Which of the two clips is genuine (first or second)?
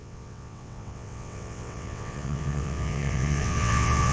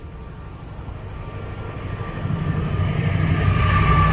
second